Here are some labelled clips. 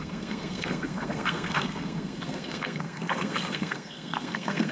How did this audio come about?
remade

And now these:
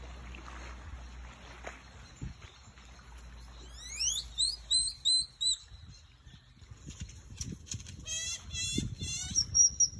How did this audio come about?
recorded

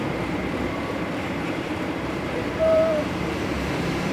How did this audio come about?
remade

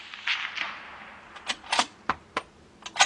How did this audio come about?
recorded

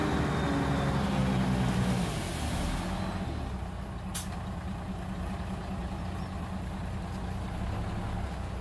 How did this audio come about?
recorded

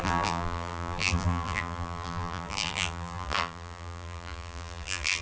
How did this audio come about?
remade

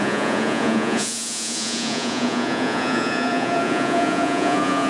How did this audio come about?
remade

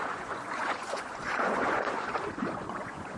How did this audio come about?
remade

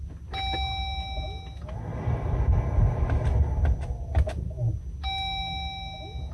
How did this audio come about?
recorded